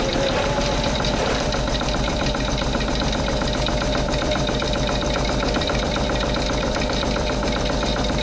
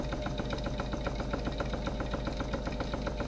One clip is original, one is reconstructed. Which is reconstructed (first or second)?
first